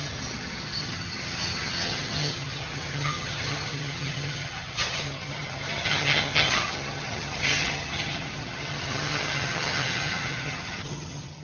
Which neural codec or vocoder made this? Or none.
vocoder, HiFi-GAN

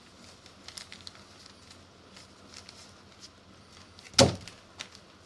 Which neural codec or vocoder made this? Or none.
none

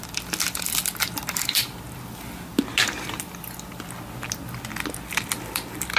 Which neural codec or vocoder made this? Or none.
none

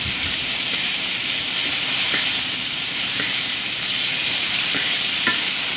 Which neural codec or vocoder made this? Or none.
vocoder, BigVGAN v2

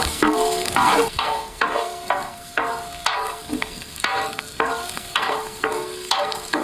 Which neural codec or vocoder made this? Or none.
codec, SNAC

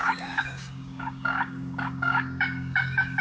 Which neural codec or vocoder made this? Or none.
codec, DAC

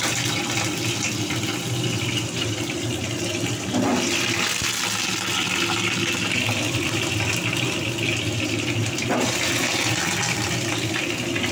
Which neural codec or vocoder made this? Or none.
none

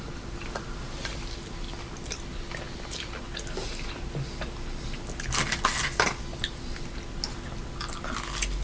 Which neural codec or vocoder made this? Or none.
none